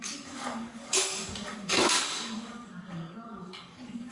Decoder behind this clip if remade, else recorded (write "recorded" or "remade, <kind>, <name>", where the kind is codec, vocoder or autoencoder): remade, codec, DAC